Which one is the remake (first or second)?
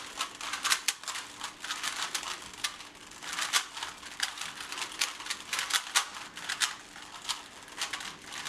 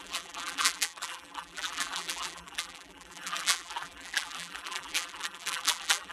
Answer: second